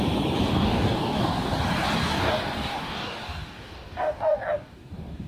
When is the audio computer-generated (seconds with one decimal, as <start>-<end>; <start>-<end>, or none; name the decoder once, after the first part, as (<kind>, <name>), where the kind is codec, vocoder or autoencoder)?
0.5-1.5 (codec, DAC); 2.0-5.3